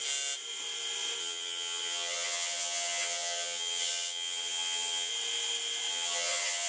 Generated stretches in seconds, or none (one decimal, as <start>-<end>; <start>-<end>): 1.2-5.1; 5.9-6.7